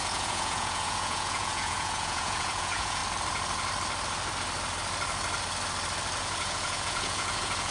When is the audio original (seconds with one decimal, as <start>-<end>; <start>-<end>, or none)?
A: 3.0-6.2